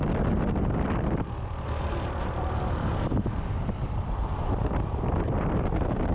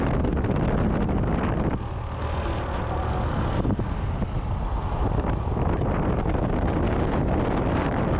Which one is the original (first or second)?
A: second